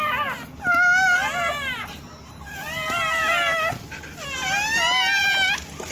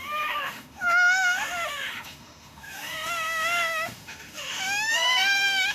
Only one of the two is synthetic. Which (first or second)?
second